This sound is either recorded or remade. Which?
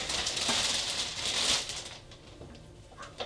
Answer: recorded